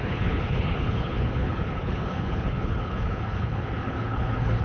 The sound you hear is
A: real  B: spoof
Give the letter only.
B